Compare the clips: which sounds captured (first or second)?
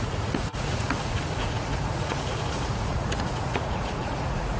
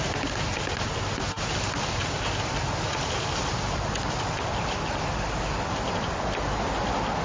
second